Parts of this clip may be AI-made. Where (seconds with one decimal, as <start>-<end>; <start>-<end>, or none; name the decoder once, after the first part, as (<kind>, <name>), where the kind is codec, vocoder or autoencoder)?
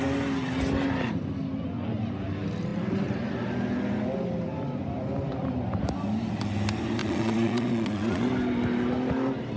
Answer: 7.0-8.3 (vocoder, Vocos)